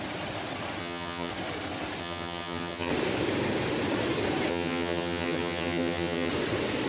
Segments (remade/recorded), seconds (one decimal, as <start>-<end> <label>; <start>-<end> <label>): 0.0-0.8 recorded; 0.8-1.3 remade; 1.3-2.0 recorded; 2.0-2.9 remade; 2.9-4.5 recorded; 4.5-6.3 remade; 6.3-6.9 recorded